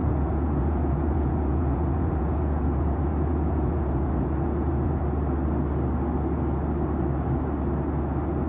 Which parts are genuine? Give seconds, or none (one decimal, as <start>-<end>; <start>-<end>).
5.0-8.5